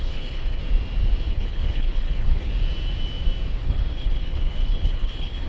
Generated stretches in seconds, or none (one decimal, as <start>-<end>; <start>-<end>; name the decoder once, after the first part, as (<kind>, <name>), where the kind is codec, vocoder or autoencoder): 0.0-0.6 (codec, HILCodec); 1.3-2.5; 3.6-5.5